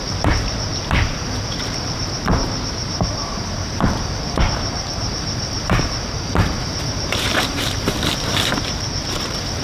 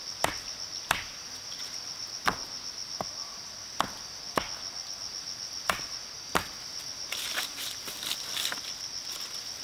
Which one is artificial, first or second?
first